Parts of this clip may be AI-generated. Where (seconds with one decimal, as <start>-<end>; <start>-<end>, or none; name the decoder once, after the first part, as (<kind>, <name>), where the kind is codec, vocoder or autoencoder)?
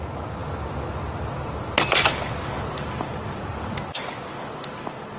none